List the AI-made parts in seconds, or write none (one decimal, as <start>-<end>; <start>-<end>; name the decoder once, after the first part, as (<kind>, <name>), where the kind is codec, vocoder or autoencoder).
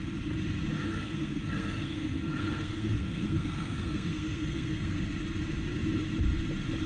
0.9-5.0 (codec, SNAC)